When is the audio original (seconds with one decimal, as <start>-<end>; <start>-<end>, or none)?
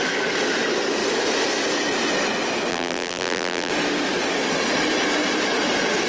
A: 0.0-2.7; 3.7-6.1